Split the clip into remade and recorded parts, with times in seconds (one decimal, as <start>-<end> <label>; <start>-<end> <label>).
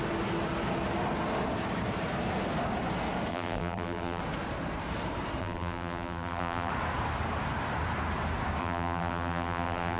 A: 0.0-3.3 recorded; 3.3-4.2 remade; 4.2-5.4 recorded; 5.4-6.7 remade; 6.7-8.6 recorded; 8.6-10.0 remade